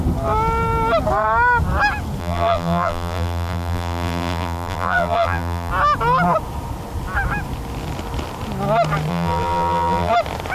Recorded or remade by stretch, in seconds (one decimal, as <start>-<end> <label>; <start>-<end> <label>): 0.0-2.2 recorded; 2.2-5.7 remade; 5.7-9.1 recorded; 9.1-10.1 remade; 10.1-10.5 recorded